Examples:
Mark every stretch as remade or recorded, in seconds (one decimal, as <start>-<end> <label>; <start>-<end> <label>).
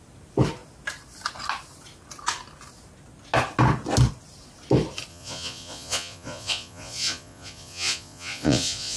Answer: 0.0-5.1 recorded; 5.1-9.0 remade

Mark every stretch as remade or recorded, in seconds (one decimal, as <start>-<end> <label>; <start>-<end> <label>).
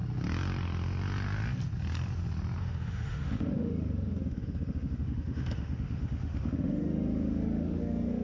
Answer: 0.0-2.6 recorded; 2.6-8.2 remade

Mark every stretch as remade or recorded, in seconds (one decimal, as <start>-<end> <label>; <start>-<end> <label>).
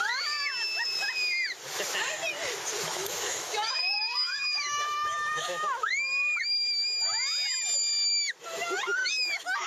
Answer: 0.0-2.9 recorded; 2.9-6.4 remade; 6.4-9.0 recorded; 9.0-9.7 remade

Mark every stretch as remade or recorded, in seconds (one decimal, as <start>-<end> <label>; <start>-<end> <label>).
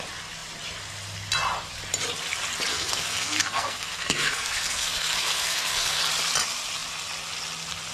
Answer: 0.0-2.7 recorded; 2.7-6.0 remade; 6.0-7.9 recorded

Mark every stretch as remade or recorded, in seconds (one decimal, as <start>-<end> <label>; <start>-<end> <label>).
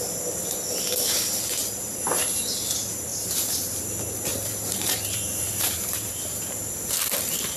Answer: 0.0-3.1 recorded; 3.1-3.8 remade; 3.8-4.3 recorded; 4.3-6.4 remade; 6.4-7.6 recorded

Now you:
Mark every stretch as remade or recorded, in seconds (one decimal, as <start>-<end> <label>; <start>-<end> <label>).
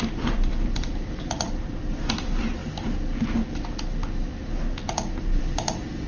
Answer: 0.0-2.6 remade; 2.6-5.4 recorded; 5.4-6.1 remade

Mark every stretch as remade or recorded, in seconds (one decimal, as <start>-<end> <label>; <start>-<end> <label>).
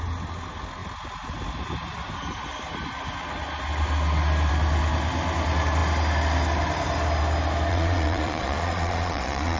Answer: 0.0-7.7 recorded; 7.7-9.6 remade